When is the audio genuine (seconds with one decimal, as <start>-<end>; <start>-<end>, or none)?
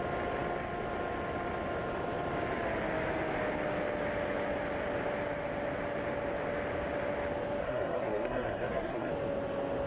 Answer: 0.0-7.6; 9.1-9.9